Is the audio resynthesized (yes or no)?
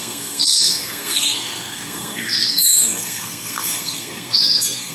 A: yes